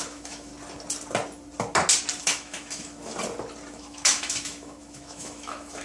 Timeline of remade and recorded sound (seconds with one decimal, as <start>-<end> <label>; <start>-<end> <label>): 0.0-0.5 remade; 0.5-2.2 recorded; 2.2-3.1 remade; 3.1-3.7 recorded; 3.7-5.8 remade